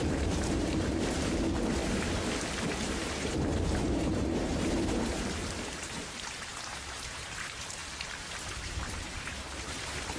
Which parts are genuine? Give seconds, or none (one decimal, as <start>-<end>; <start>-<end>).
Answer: 1.8-2.7; 7.8-8.4